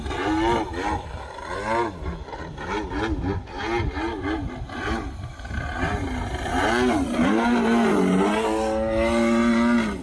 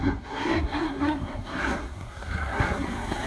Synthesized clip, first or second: second